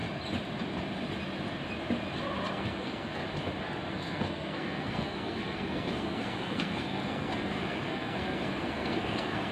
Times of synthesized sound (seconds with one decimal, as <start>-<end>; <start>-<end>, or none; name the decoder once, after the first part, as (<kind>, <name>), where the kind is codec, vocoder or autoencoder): 2.5-3.2 (codec, SNAC); 3.9-9.5